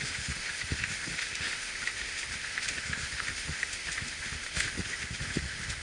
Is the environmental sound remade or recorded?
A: remade